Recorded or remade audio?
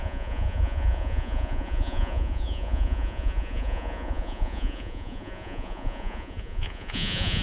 remade